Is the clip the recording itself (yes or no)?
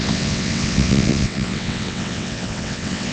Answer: no